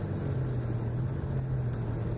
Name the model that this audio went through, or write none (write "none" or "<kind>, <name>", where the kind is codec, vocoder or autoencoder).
none